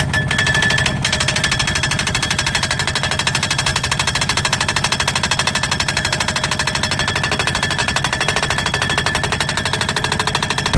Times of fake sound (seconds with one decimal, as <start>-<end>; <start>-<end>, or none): 3.7-4.2; 7.8-8.4